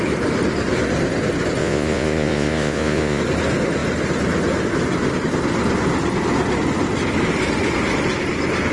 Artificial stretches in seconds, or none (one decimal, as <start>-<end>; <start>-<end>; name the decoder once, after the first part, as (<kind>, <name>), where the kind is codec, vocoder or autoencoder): 1.6-3.2 (vocoder, Vocos)